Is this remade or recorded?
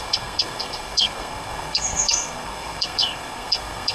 remade